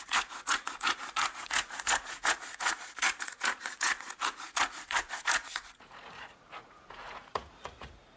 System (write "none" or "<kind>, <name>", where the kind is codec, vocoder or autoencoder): vocoder, Vocos